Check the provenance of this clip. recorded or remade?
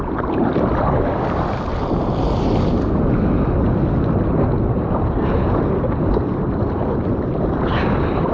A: recorded